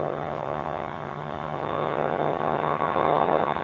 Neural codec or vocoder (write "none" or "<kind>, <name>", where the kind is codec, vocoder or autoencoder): vocoder, HiFi-GAN